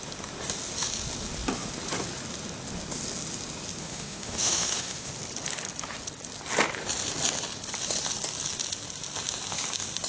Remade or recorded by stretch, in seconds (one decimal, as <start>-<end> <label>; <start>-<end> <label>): 0.0-3.8 recorded; 3.8-5.1 remade; 5.1-10.1 recorded